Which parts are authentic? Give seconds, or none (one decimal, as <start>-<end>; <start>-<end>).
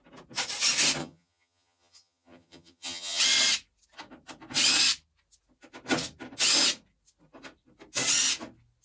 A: 0.0-1.0; 3.2-8.8